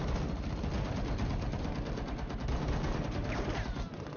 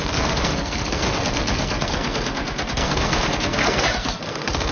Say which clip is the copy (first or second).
second